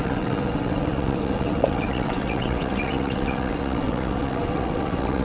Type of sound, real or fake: fake